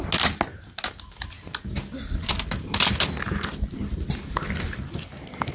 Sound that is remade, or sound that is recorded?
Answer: recorded